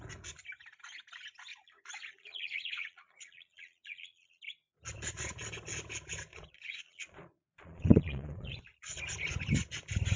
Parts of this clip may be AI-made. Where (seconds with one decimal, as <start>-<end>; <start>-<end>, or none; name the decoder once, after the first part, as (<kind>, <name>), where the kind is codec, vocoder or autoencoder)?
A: 1.5-4.4 (vocoder, Vocos); 6.3-9.0